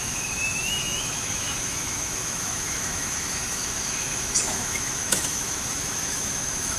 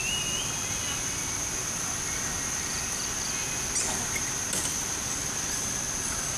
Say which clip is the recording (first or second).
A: second